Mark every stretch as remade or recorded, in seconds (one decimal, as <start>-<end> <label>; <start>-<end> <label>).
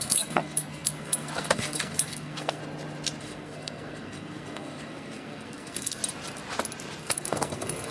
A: 0.0-2.6 remade; 2.6-3.2 recorded; 3.2-6.0 remade; 6.0-7.0 recorded; 7.0-7.9 remade